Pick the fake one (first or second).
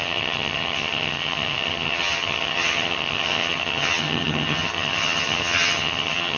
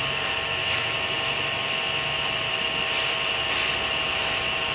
first